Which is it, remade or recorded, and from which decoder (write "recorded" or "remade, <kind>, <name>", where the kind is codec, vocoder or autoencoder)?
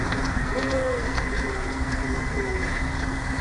remade, codec, SNAC